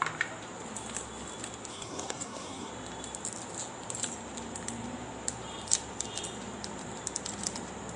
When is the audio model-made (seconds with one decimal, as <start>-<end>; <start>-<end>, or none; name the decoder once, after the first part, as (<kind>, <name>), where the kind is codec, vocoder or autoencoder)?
1.7-2.7 (codec, SNAC)